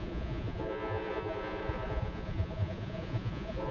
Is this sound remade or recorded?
remade